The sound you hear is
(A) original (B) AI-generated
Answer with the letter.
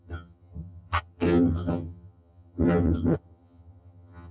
B